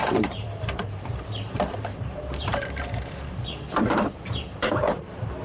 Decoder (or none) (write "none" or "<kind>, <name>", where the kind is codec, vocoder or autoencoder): vocoder, BigVGAN v2